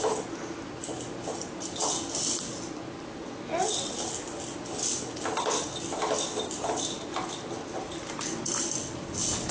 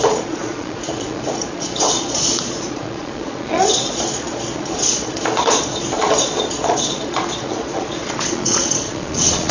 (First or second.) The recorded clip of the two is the first